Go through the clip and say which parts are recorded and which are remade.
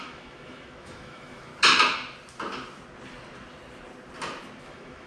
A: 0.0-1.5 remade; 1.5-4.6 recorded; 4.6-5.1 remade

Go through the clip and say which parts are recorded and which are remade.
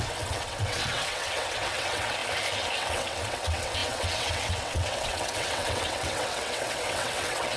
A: 0.0-2.2 remade; 2.2-2.8 recorded; 2.8-7.6 remade